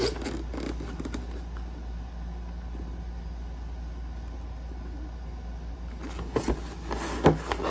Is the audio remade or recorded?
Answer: recorded